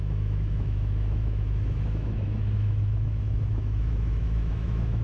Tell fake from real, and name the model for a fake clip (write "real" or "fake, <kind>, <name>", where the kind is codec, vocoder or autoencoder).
fake, autoencoder, DAC-VAE